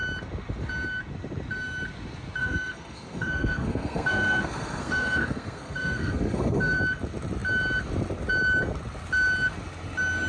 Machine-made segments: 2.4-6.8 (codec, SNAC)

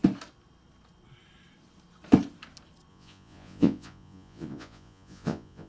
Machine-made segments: 2.9-5.7 (vocoder, Vocos)

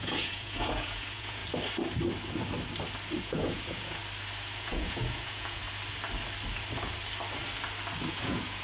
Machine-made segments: 0.0-1.4 (vocoder, Vocos); 3.2-4.0; 4.6-5.6; 8.1-8.6

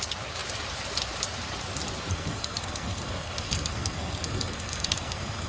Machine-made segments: 2.1-5.5 (codec, SNAC)

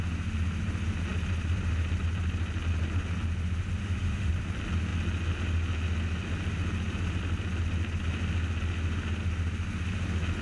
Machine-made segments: 3.8-4.3 (autoencoder, DAC-VAE)

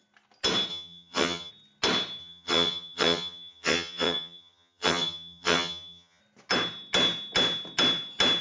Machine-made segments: 0.7-1.5 (vocoder, HiFi-GAN); 2.2-6.2

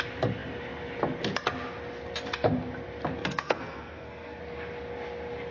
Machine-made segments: 3.2-4.4 (codec, SNAC)

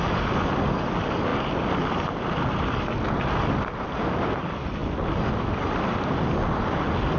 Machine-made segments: none